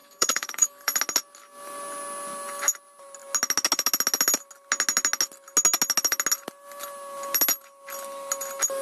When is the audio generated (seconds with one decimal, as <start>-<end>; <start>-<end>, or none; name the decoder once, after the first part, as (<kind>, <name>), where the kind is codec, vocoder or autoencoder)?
0.0-1.0 (codec, DAC)